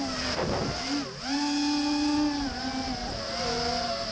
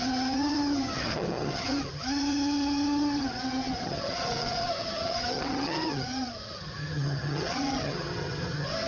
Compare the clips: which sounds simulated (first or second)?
second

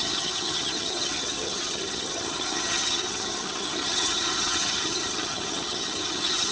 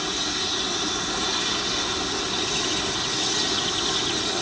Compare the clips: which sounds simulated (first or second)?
first